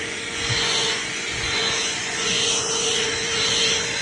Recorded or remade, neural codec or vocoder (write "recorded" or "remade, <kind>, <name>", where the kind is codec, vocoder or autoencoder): remade, vocoder, Vocos